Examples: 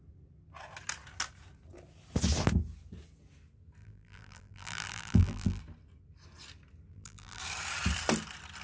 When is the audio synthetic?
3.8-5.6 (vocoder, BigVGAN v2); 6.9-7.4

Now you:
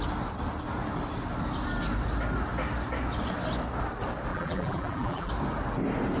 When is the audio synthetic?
4.3-5.3 (vocoder, BigVGAN v2)

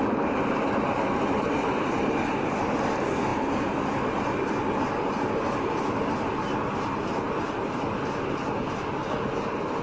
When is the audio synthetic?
none

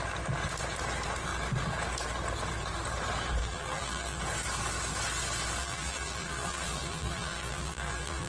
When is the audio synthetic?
3.4-4.2 (vocoder, BigVGAN v2); 5.6-8.3

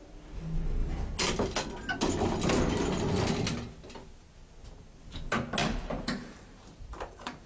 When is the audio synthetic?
5.6-7.5 (vocoder, BigVGAN v2)

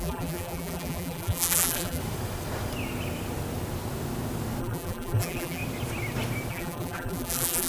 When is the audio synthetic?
0.0-2.0 (vocoder, BigVGAN v2); 4.6-5.6; 6.5-7.7

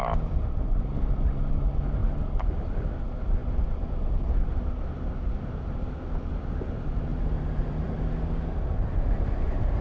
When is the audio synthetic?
2.0-2.6 (vocoder, BigVGAN v2); 7.1-8.1

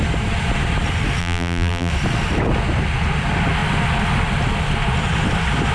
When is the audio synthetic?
1.2-1.9 (vocoder, BigVGAN v2)